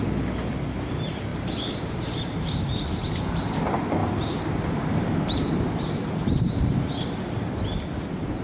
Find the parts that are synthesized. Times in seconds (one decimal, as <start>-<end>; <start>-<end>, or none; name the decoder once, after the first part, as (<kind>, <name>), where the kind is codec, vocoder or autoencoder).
1.3-3.6 (vocoder, BigVGAN v2); 4.0-7.5

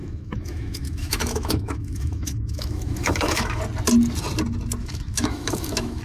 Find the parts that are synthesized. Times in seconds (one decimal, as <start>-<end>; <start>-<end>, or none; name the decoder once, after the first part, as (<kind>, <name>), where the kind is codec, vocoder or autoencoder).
0.0-3.6 (autoencoder, DAC-VAE); 4.8-6.0

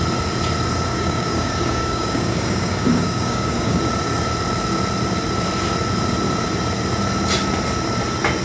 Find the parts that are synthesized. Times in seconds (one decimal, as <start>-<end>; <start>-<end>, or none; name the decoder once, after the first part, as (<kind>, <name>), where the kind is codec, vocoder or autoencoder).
0.9-3.8 (codec, DAC)